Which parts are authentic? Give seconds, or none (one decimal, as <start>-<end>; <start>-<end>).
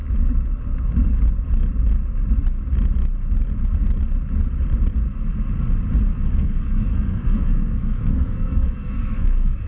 0.0-6.1